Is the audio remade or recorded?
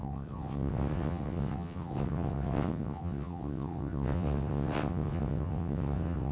remade